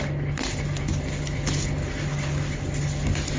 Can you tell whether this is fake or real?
real